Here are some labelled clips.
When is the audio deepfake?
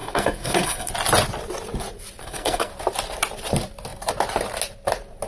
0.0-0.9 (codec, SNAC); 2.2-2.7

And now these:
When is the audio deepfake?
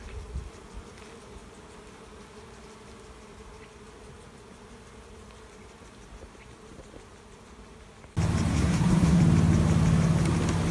8.5-9.2 (codec, SNAC)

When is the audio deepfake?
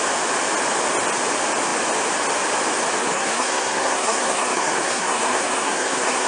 3.0-6.3 (codec, SNAC)